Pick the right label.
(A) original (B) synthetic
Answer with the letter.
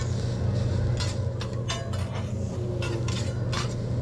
A